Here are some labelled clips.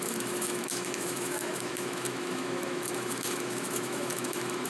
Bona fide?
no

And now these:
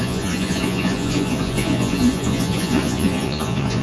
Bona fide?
no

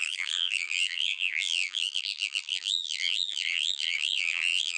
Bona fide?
no